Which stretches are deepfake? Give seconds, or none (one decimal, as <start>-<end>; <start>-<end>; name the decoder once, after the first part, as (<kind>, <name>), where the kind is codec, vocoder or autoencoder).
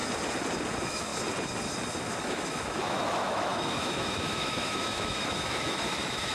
0.7-1.1 (autoencoder, DAC-VAE); 2.2-6.3